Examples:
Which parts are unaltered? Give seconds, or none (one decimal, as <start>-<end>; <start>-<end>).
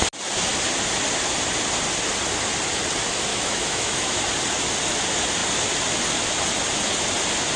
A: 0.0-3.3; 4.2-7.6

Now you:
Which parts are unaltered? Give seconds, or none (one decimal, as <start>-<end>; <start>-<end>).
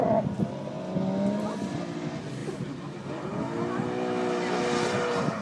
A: 0.0-5.4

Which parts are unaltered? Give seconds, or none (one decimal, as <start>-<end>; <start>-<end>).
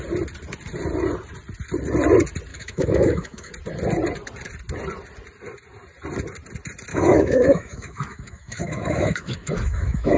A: 0.0-2.5; 3.5-6.9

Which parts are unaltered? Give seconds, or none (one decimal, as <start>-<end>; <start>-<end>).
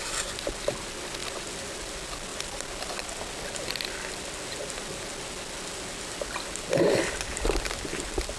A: 0.0-8.4